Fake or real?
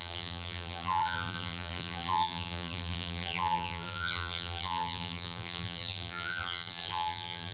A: fake